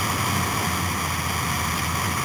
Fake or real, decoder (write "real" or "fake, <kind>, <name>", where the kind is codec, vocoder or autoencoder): real